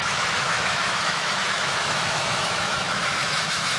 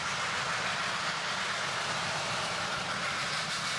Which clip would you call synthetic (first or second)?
first